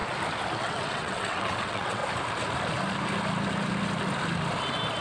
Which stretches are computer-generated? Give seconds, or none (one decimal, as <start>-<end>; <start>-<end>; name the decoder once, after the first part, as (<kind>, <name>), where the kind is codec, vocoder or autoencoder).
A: 0.6-2.0 (vocoder, WaveNeXt)